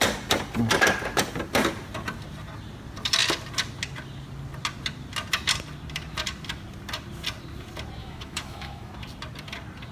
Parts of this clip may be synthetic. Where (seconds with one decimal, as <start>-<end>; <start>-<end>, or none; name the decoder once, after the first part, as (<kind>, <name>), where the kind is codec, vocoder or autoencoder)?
8.0-8.9 (autoencoder, DAC-VAE)